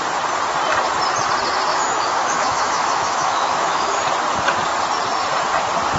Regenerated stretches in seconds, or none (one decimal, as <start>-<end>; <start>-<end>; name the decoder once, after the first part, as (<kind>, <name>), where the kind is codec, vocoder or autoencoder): 1.7-4.0 (autoencoder, DAC-VAE)